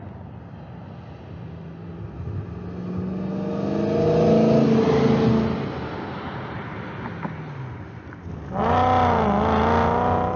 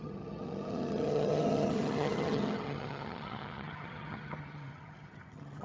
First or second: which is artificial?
second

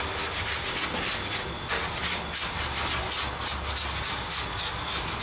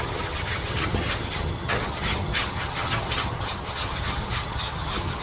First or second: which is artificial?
second